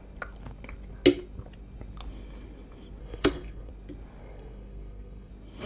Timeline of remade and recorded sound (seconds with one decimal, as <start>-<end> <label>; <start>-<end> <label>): 0.0-3.0 recorded; 3.0-3.7 remade; 3.7-4.2 recorded; 4.2-5.3 remade; 5.3-5.7 recorded